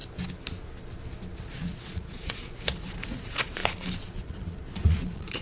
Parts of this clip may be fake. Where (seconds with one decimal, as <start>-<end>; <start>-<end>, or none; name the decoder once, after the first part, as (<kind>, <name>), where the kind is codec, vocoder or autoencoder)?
1.4-3.6 (vocoder, Vocos); 4.1-5.4

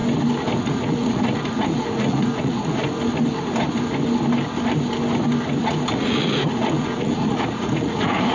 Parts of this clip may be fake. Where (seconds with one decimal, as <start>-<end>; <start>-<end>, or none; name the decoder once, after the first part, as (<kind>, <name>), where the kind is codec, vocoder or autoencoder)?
0.6-2.8 (vocoder, Vocos); 5.9-8.3

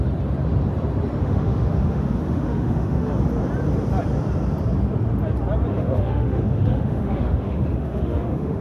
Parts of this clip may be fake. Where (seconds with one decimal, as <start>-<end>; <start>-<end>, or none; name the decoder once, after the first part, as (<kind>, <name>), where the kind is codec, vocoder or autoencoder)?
1.2-3.1 (autoencoder, DAC-VAE); 5.7-8.6

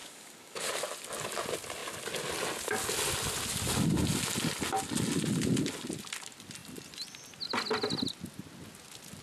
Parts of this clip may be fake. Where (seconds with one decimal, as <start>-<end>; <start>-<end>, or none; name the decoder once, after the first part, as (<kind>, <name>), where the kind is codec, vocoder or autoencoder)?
0.0-0.7 (codec, DAC)

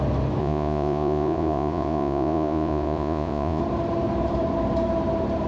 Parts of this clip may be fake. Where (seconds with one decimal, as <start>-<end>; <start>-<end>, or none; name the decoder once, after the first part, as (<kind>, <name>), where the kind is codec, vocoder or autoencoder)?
0.4-3.6 (vocoder, Vocos)

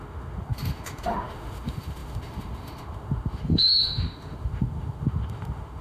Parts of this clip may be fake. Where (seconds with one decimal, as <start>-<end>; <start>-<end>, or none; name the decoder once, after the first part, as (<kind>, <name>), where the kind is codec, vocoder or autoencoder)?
0.0-5.8 (autoencoder, DAC-VAE)

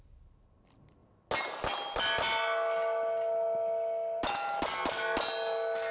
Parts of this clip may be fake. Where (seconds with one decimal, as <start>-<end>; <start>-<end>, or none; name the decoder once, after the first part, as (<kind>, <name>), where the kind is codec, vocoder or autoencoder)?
none

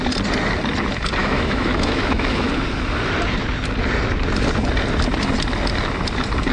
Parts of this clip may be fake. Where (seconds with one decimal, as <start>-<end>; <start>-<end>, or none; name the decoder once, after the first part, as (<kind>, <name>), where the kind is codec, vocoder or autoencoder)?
1.2-2.5 (autoencoder, DAC-VAE)